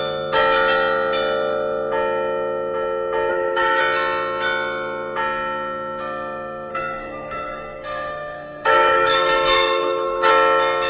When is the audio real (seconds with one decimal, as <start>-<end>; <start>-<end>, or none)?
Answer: 0.0-3.3; 3.8-6.7; 10.3-10.9